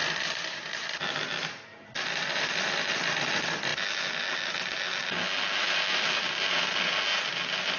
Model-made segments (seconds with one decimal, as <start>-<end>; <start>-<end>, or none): 0.0-3.7; 5.6-7.8